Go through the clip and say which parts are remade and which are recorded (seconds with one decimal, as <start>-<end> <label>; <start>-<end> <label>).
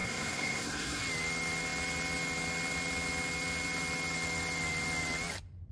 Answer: 0.0-1.0 remade; 1.0-5.7 recorded